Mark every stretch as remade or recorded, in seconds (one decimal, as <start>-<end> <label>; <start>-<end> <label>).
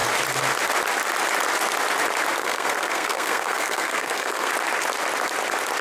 0.0-2.4 recorded; 2.4-4.5 remade; 4.5-5.8 recorded